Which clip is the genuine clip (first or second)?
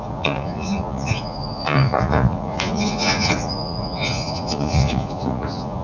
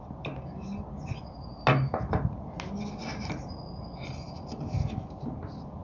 second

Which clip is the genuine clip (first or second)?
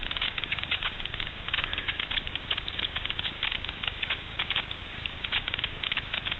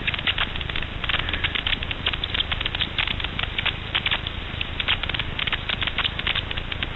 second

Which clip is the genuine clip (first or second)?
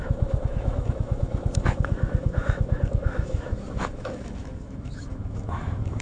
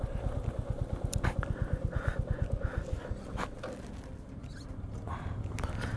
second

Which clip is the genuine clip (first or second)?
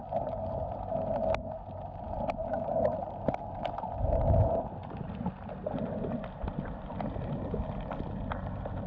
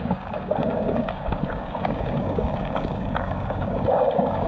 first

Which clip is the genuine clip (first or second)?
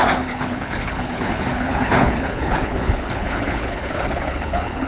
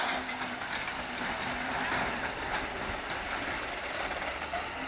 second